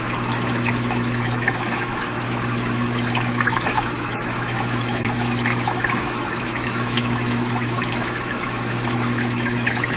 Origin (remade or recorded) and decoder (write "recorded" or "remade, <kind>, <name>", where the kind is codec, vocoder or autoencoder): remade, autoencoder, DAC-VAE